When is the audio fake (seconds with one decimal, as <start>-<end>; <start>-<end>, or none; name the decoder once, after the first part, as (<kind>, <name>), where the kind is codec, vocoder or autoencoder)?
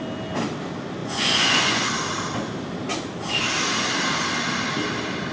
1.0-1.9 (vocoder, Vocos)